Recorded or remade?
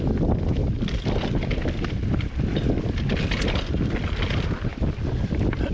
recorded